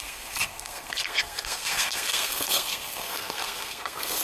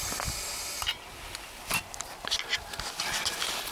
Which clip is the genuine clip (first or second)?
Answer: second